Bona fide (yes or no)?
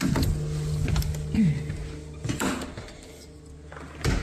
yes